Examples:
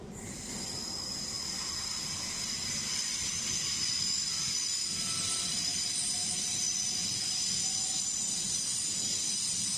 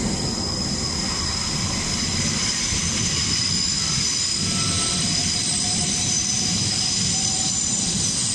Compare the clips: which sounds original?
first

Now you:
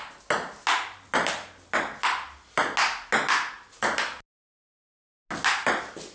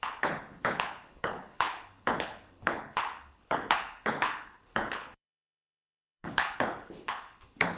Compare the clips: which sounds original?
first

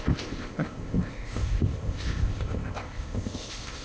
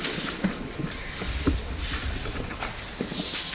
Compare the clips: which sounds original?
second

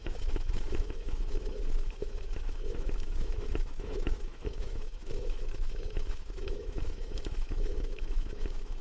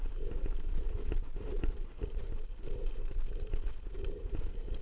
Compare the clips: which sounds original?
second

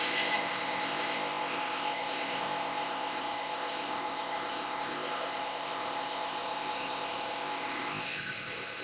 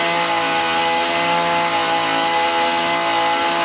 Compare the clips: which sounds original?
second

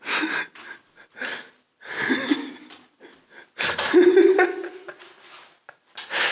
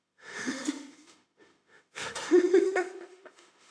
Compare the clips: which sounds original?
first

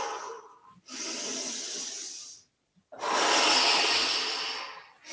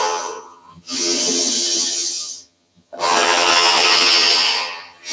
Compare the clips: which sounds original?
first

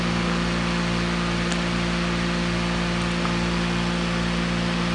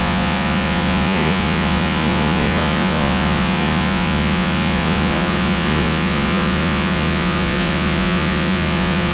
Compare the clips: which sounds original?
first